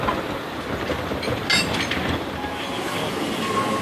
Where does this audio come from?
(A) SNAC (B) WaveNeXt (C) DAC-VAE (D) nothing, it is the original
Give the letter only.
D